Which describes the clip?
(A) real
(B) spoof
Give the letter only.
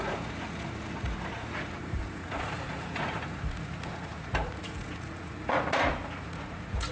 B